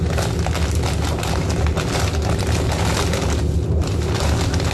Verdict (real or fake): real